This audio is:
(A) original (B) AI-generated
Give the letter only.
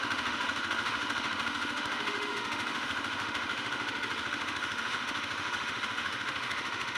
B